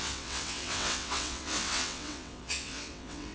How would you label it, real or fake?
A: fake